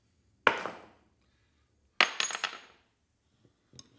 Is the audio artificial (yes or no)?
no